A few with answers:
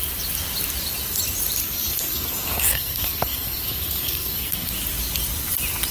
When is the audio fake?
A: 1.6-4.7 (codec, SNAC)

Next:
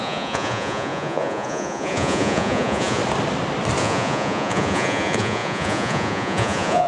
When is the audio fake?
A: 0.0-3.0 (vocoder, Vocos); 3.8-6.9

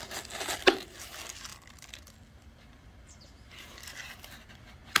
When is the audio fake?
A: none